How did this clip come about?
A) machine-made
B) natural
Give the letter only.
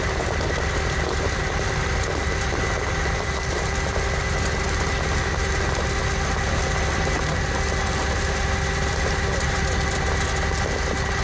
B